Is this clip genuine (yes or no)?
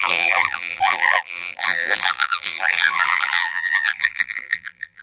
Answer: no